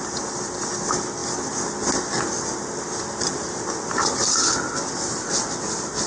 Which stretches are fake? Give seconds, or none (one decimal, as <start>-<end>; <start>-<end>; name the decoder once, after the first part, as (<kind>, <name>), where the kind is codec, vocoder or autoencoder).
none